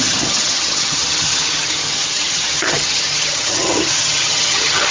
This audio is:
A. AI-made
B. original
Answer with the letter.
A